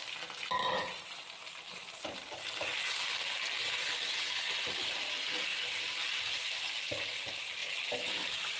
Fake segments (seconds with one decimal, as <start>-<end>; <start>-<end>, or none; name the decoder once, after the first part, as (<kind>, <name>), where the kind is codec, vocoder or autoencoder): none